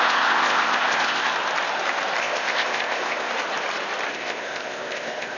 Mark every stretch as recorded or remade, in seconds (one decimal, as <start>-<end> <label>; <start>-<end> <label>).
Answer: 0.0-1.3 remade; 1.3-2.2 recorded; 2.2-3.3 remade; 3.3-4.1 recorded; 4.1-5.4 remade